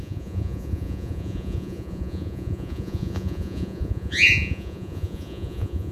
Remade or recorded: remade